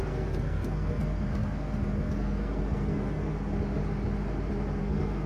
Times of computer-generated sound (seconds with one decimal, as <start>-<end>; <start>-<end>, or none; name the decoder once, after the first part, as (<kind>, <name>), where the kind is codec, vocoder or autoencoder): 0.0-3.3 (codec, SNAC); 4.8-5.3